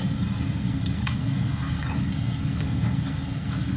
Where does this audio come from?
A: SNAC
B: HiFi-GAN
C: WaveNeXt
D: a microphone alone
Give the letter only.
A